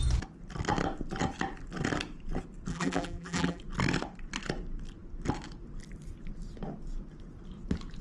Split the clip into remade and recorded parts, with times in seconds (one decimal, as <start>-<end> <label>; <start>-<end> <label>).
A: 0.0-2.7 recorded; 2.7-3.6 remade; 3.6-8.0 recorded